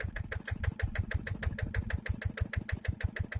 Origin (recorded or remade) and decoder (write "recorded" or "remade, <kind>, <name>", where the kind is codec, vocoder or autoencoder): recorded